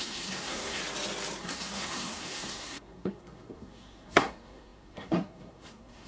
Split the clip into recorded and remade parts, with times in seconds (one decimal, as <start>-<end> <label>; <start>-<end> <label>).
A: 0.0-0.8 remade; 0.8-1.4 recorded; 1.4-6.1 remade